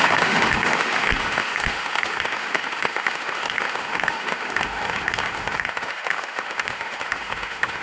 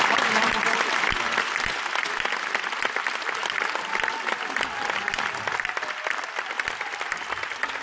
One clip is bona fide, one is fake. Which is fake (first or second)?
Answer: first